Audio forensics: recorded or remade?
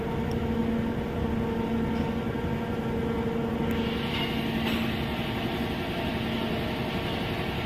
recorded